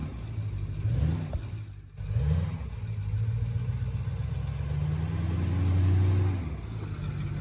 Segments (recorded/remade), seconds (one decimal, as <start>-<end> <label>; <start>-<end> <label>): 0.0-7.4 recorded